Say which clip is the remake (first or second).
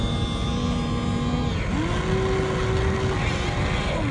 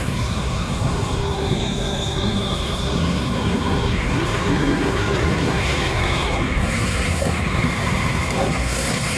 second